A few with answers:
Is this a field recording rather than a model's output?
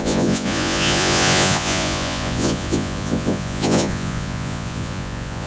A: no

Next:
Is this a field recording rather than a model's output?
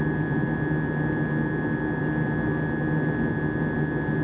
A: yes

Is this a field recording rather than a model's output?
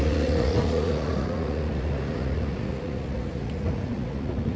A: no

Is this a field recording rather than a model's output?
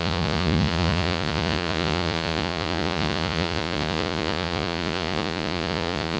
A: no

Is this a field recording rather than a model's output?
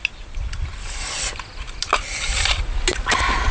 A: yes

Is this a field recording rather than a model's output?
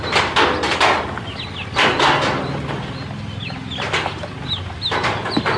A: yes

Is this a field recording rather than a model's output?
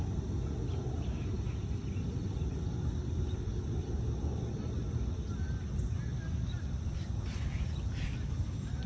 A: yes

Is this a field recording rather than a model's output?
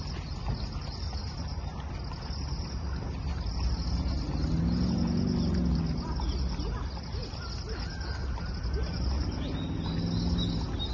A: yes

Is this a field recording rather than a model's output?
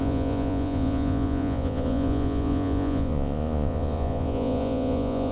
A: no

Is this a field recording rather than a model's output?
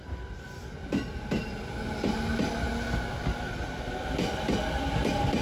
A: yes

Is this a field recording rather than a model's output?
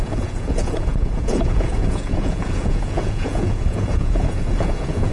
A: no